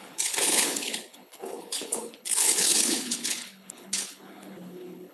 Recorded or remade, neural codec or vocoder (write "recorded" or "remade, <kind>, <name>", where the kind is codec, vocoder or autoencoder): remade, codec, HILCodec